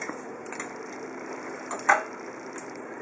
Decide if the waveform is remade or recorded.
recorded